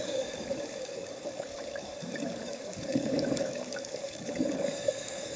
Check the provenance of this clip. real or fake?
fake